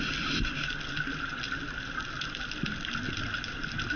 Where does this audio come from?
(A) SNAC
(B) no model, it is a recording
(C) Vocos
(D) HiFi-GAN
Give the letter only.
B